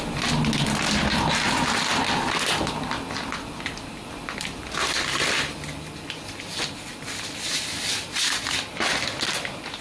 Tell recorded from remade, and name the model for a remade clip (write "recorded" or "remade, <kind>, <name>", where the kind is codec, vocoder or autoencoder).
recorded